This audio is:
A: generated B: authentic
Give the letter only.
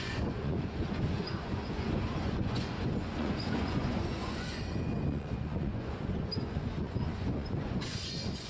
A